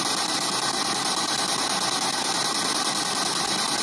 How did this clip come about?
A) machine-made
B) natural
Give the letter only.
B